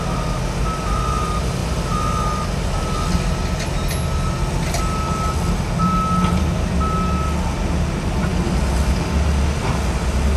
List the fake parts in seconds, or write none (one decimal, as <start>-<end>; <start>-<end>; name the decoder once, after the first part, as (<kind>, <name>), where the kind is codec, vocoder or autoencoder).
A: none